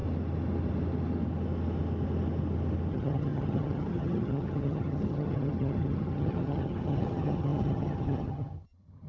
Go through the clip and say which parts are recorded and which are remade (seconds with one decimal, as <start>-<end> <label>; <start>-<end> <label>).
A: 0.0-2.9 recorded; 2.9-9.1 remade

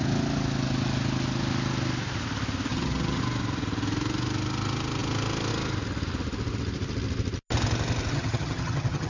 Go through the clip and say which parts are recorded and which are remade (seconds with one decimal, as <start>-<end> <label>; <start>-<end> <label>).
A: 0.0-2.7 recorded; 2.7-3.2 remade; 3.2-8.1 recorded; 8.1-9.1 remade

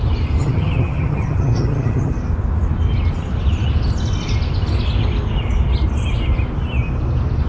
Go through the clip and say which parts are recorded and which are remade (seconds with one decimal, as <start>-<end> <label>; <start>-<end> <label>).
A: 0.0-0.4 recorded; 0.4-2.1 remade; 2.1-7.5 recorded

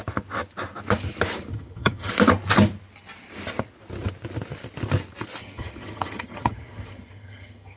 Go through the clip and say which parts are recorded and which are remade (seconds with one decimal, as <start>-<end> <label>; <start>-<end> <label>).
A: 0.0-1.5 recorded; 1.5-2.1 remade; 2.1-5.4 recorded; 5.4-7.8 remade

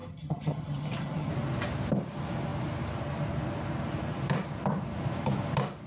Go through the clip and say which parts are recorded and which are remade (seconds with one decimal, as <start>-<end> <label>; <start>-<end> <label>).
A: 0.0-1.3 remade; 1.3-5.9 recorded